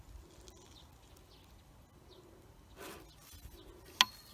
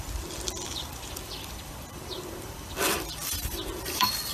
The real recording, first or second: first